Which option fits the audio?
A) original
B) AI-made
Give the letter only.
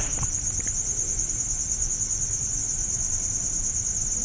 A